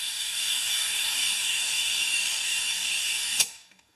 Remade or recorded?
remade